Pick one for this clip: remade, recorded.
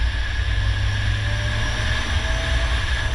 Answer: recorded